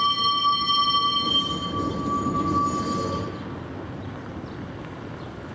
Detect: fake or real real